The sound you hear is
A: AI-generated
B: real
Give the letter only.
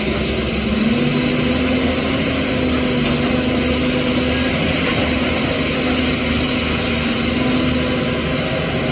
B